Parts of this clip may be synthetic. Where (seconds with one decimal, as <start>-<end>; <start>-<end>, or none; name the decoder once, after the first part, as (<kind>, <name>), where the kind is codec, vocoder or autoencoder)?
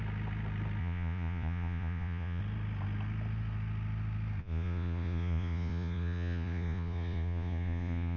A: 0.8-2.4 (vocoder, Vocos); 4.4-8.2